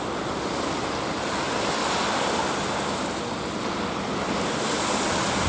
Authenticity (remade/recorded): recorded